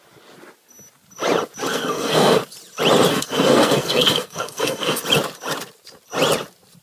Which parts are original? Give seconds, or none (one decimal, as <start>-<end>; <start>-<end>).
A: 0.0-1.7; 2.4-3.1; 5.0-6.8